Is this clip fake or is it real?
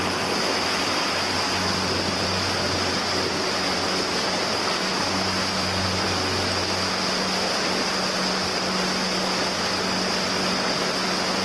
real